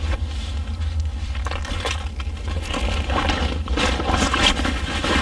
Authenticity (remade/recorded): recorded